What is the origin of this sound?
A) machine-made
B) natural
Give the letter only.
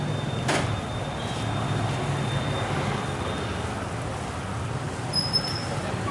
B